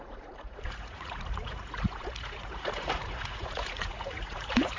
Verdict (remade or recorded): remade